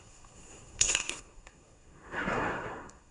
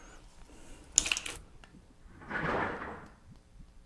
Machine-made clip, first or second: first